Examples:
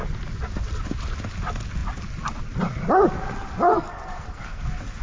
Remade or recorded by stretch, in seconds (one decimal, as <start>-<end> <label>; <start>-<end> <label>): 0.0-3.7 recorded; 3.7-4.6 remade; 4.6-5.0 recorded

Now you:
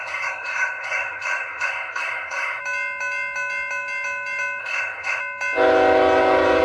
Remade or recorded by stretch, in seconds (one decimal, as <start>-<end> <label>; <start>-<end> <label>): 0.0-2.6 remade; 2.6-4.6 recorded; 4.6-5.2 remade; 5.2-6.6 recorded

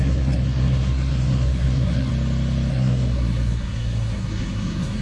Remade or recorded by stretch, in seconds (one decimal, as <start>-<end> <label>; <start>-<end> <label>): 0.0-2.1 remade; 2.1-2.7 recorded; 2.7-5.0 remade

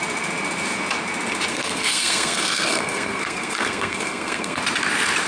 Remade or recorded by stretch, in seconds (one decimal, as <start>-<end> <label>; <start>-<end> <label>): 0.0-1.5 recorded; 1.5-4.6 remade; 4.6-5.3 recorded

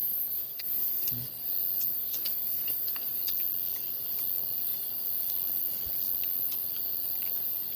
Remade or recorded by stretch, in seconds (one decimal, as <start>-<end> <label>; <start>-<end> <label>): 0.0-1.1 remade; 1.1-1.9 recorded; 1.9-3.2 remade; 3.2-7.8 recorded

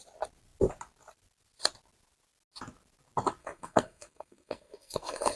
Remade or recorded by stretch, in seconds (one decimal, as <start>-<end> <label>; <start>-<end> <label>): 0.0-3.4 recorded; 3.4-5.4 remade

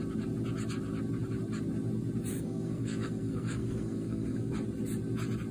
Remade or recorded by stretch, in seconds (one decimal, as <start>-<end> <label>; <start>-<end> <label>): 0.0-2.3 recorded; 2.3-4.5 remade; 4.5-5.5 recorded

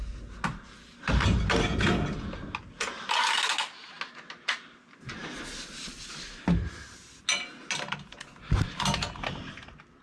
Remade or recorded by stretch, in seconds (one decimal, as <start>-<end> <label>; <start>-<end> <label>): 0.0-10.0 recorded